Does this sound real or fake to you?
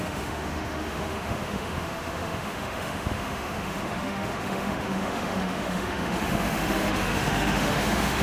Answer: fake